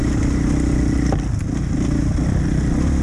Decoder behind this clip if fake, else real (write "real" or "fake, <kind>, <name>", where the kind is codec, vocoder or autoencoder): real